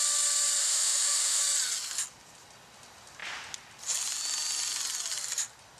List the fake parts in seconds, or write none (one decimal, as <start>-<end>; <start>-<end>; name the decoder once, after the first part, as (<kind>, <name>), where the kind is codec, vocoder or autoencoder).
0.6-1.4 (autoencoder, DAC-VAE)